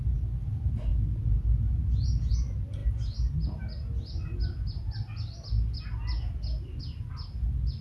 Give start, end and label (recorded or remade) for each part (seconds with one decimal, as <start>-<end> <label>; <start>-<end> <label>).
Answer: 0.0-7.8 recorded